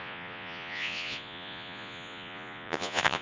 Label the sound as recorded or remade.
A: remade